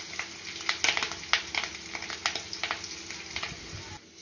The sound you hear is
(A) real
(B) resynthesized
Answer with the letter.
A